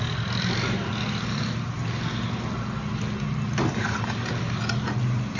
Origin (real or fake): real